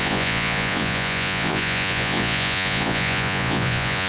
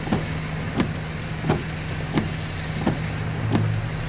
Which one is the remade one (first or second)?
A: first